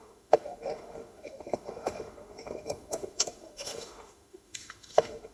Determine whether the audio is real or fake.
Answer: fake